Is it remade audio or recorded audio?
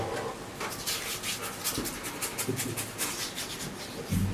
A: recorded